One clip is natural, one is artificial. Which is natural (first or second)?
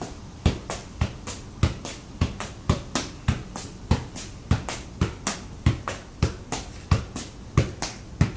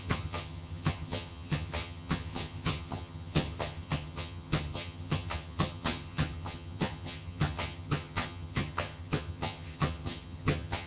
first